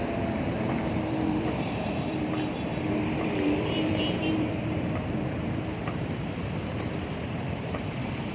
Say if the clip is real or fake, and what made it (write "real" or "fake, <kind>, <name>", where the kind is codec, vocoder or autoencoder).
fake, vocoder, BigVGAN v2